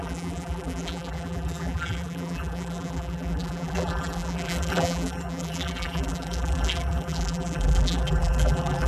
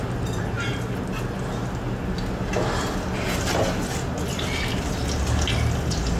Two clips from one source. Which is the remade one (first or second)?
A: first